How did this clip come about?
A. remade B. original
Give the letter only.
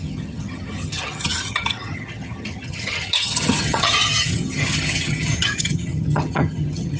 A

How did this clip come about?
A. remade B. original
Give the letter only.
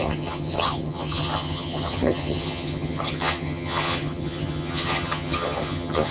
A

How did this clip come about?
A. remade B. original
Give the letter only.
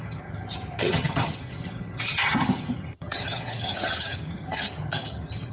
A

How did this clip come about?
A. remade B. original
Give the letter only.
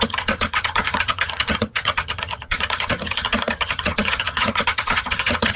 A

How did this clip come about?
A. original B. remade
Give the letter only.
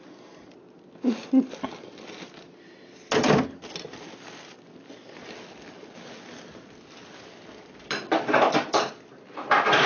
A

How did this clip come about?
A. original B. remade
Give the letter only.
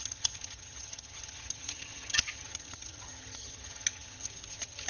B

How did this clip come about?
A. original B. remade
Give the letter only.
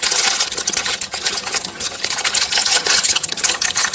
B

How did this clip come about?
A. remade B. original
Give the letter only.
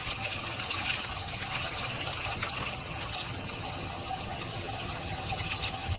A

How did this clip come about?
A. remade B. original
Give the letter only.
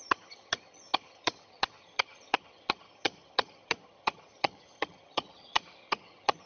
A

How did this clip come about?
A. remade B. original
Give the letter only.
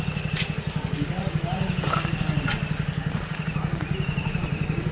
B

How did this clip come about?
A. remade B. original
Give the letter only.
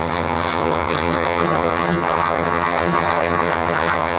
A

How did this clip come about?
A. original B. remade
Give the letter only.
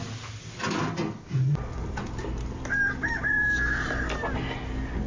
A